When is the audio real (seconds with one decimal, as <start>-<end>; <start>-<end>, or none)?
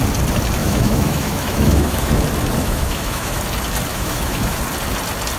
0.0-0.6; 2.2-2.6; 3.4-3.9; 4.6-5.4